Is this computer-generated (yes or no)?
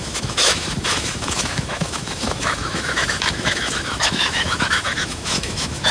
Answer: yes